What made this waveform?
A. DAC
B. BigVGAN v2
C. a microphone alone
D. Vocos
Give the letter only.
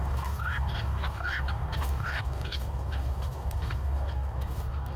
A